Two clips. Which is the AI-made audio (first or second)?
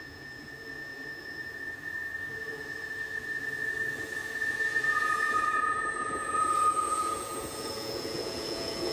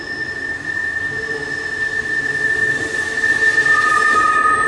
first